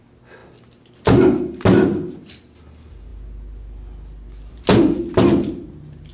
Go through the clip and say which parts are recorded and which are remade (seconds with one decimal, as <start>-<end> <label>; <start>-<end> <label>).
0.0-6.1 recorded